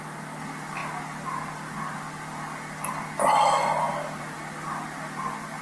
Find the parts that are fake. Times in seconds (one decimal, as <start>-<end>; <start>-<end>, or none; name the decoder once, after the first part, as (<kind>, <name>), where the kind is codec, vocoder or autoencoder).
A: none